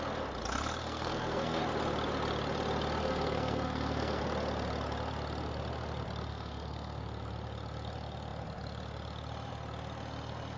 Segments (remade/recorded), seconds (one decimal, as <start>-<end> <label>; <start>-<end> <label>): 0.0-0.8 recorded; 0.8-1.6 remade; 1.6-3.0 recorded; 3.0-4.2 remade; 4.2-6.3 recorded; 6.3-7.0 remade; 7.0-10.6 recorded

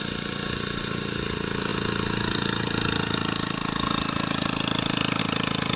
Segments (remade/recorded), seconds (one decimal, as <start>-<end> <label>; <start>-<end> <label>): 0.0-5.8 recorded

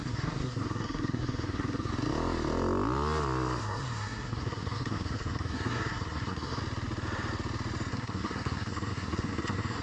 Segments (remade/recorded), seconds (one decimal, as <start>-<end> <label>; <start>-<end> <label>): 0.0-1.9 remade; 1.9-3.6 recorded; 3.6-6.6 remade; 6.6-7.9 recorded; 7.9-9.8 remade

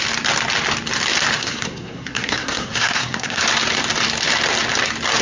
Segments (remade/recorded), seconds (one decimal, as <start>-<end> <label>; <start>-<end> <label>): 0.0-1.4 recorded; 1.4-3.4 remade; 3.4-5.2 recorded